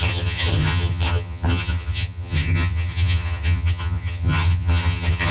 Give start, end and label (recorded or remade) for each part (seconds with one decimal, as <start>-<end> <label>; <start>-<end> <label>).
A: 0.0-5.3 remade